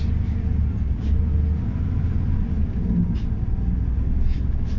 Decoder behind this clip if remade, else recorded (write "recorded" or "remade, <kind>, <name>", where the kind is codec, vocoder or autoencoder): recorded